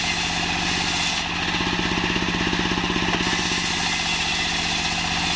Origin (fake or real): real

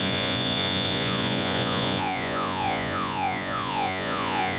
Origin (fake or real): fake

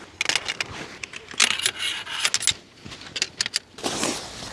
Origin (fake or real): real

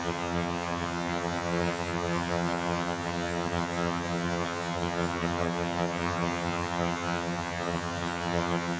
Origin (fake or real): fake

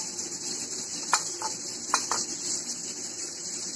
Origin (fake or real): real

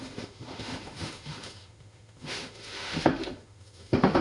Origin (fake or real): fake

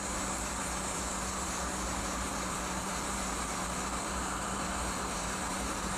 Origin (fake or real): fake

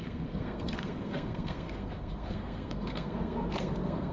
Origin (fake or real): fake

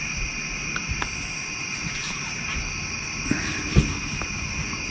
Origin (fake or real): real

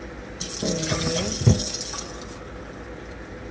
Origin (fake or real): real